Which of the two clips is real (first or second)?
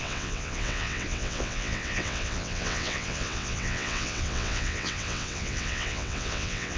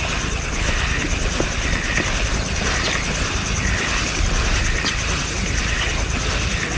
second